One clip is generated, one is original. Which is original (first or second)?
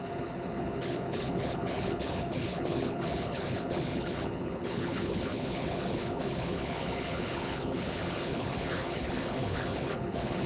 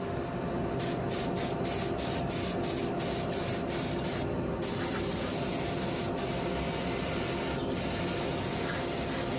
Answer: second